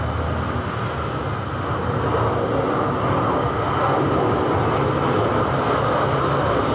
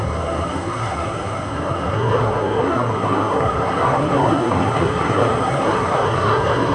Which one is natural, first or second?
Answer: first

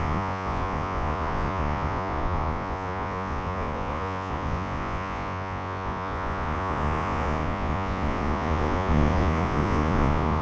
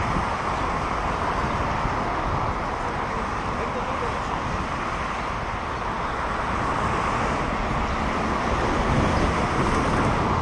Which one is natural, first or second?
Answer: second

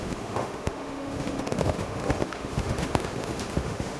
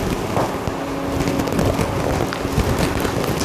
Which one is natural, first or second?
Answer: second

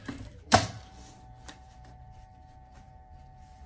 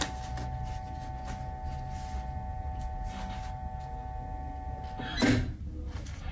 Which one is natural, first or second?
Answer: second